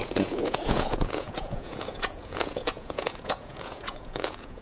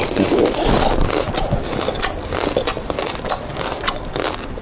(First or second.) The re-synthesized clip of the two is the first